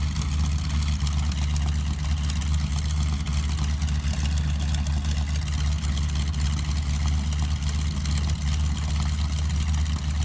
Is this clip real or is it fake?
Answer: real